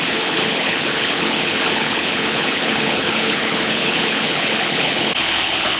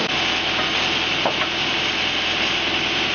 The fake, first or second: first